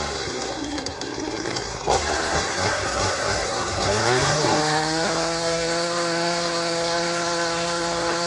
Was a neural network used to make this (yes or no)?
yes